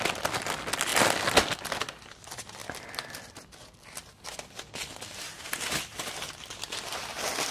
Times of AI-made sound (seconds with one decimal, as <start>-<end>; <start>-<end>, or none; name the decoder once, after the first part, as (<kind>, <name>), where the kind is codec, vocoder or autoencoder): none